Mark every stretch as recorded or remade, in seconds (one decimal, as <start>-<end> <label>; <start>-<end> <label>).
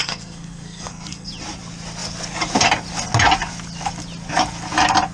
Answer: 0.0-1.3 remade; 1.3-5.1 recorded